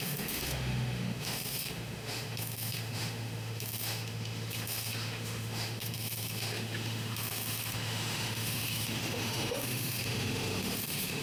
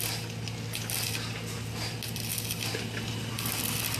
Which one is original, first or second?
second